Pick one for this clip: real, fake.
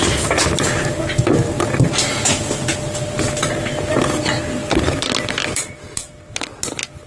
real